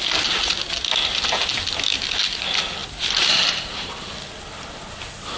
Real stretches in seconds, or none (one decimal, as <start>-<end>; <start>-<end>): 0.0-5.4